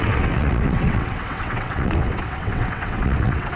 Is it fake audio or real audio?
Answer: fake